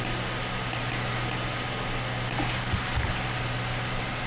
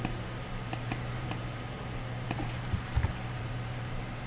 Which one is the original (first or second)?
first